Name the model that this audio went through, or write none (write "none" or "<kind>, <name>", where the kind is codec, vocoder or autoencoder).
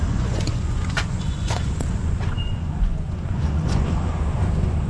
vocoder, Vocos